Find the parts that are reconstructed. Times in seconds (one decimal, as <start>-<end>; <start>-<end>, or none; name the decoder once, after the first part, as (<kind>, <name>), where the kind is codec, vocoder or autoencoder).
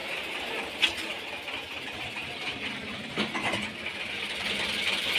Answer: 0.0-1.4 (vocoder, BigVGAN v2)